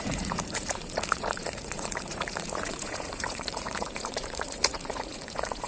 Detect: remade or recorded remade